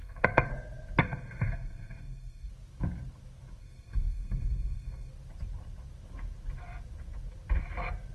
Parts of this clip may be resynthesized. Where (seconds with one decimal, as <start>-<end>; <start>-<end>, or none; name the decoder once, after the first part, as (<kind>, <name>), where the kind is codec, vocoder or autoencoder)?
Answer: 0.0-0.5 (codec, SNAC); 1.0-2.5; 3.6-5.1